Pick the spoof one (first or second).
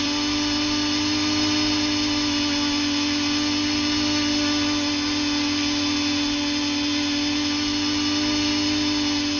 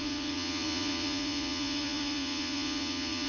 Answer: second